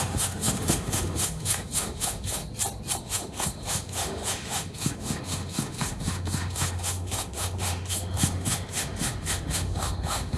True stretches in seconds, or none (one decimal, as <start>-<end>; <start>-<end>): 2.4-3.0